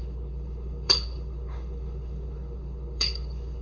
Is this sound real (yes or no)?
no